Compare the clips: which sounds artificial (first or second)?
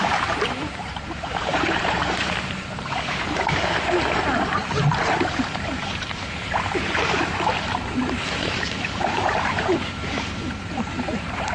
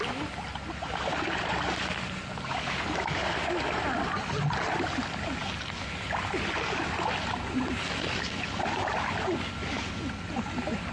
first